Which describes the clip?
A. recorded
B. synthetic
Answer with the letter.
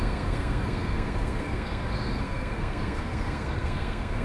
B